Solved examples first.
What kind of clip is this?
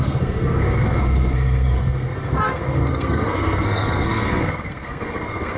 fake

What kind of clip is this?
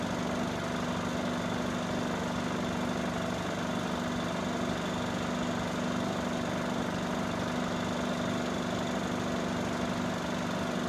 real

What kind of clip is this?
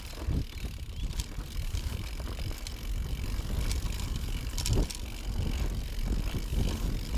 real